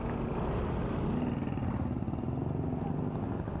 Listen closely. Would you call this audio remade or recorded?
recorded